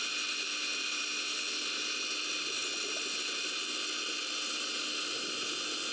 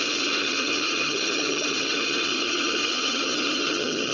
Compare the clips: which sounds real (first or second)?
first